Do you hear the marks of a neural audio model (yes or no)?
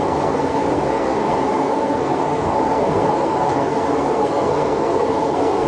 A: yes